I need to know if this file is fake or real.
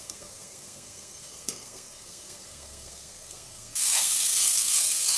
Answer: fake